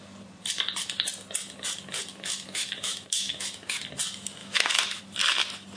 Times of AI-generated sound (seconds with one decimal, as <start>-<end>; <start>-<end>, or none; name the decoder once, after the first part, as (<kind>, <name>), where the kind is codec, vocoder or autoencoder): 2.1-3.8 (autoencoder, DAC-VAE); 4.4-5.0